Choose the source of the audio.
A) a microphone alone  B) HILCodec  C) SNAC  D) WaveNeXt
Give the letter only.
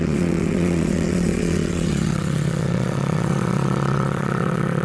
D